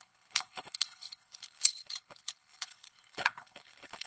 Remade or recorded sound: remade